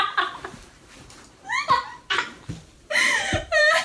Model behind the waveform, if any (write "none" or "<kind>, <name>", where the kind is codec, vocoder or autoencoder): vocoder, BigVGAN v2